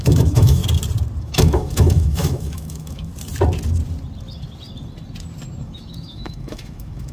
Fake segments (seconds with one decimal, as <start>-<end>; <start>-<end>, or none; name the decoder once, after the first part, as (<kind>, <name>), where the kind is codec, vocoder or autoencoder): 0.0-0.6 (autoencoder, DAC-VAE); 1.2-3.1; 5.6-7.1

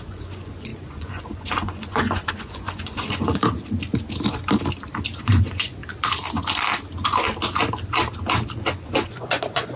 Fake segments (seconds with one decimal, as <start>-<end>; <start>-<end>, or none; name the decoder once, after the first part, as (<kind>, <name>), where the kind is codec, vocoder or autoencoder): 0.0-3.4 (vocoder, Vocos); 5.2-5.8; 8.7-9.8

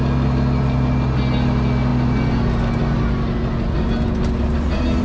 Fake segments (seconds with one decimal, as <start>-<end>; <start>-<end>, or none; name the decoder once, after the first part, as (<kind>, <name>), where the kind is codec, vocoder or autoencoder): none

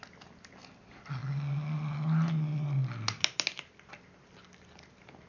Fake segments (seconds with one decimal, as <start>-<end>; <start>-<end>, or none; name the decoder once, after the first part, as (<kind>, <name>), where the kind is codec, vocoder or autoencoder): none

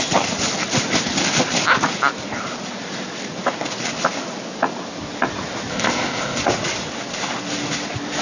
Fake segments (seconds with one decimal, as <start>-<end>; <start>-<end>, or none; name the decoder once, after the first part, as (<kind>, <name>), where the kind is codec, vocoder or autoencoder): 5.7-6.4 (codec, ZipCodec)